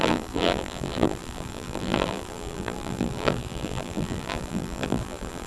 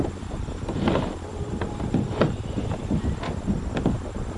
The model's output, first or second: first